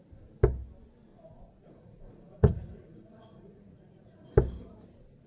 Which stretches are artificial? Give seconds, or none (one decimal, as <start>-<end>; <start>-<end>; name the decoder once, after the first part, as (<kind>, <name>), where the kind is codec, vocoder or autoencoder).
1.1-4.3 (vocoder, Vocos)